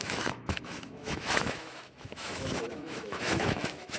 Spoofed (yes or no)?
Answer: yes